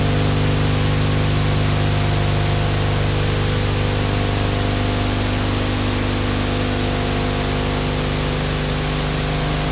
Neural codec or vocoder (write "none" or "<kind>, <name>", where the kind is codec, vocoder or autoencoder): none